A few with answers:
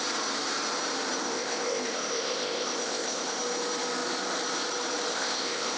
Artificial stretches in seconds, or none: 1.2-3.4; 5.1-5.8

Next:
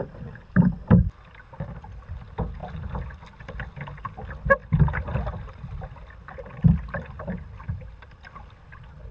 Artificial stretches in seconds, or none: none